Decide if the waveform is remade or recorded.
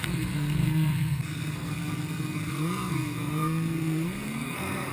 remade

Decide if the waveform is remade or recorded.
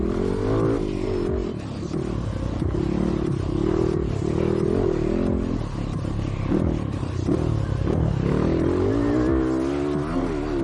recorded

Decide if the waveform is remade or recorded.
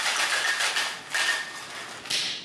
recorded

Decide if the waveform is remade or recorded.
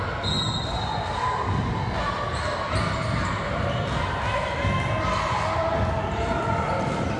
recorded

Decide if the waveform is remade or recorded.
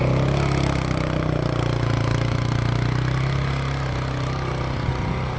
recorded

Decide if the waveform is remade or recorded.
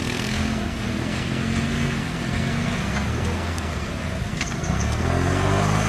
remade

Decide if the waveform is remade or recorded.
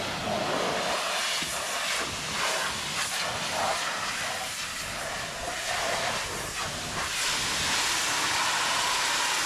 recorded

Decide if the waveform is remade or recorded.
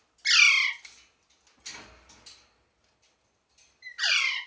recorded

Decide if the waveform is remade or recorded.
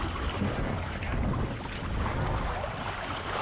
recorded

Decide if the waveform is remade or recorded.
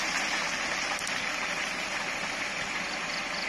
recorded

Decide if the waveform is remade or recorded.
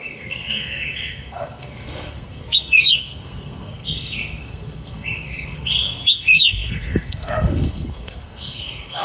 remade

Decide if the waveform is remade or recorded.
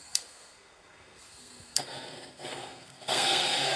remade